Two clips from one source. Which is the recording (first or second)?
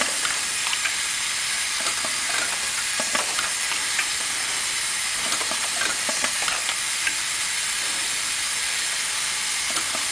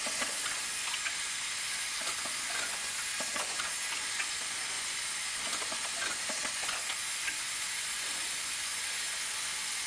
first